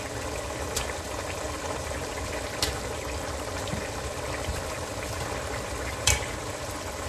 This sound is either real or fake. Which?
fake